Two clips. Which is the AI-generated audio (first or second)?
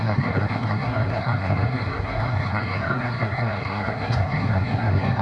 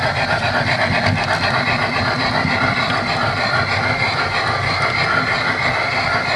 first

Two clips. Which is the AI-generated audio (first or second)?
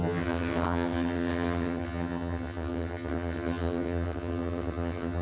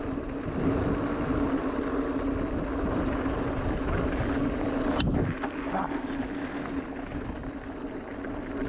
first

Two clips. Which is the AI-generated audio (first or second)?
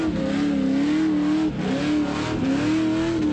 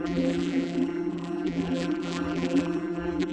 second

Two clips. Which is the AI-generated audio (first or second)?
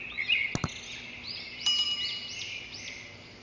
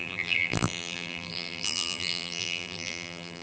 second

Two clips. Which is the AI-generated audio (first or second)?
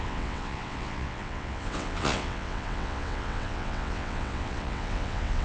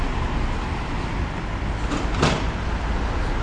first